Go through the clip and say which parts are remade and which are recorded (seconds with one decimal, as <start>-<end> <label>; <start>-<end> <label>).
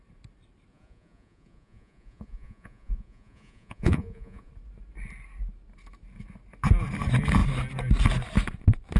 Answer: 0.0-0.7 recorded; 0.7-4.5 remade; 4.5-9.0 recorded